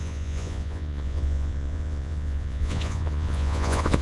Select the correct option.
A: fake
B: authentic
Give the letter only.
A